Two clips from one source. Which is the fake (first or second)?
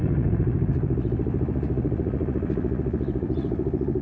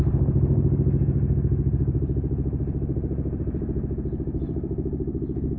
first